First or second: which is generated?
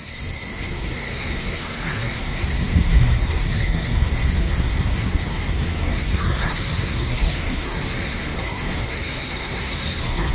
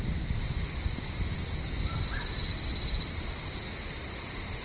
first